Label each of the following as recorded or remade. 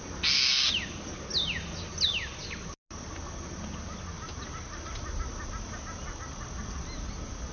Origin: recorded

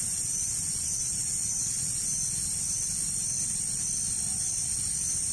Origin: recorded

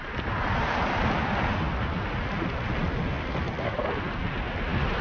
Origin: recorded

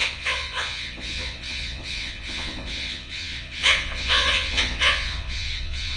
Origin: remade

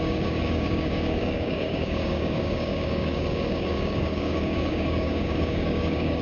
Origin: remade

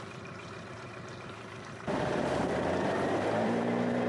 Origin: remade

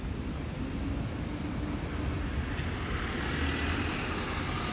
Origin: recorded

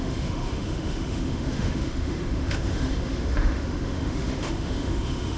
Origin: remade